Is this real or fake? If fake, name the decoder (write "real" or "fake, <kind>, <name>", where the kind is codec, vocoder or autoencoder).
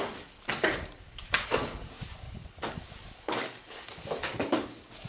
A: fake, codec, DAC